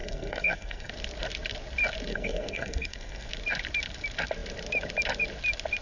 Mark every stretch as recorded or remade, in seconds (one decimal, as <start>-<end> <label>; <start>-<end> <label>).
0.0-0.9 remade; 0.9-2.1 recorded; 2.1-3.3 remade; 3.3-5.8 recorded